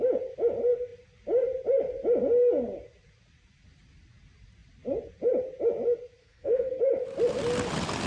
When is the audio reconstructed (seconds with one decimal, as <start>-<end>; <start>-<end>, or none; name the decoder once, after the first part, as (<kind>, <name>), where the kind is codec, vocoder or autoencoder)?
6.2-6.8 (codec, SNAC)